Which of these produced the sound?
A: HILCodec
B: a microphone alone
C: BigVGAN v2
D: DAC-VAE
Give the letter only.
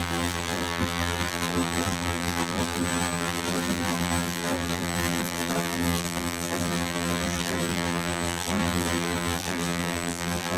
C